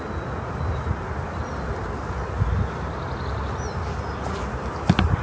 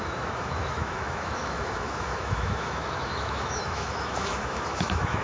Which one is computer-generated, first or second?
second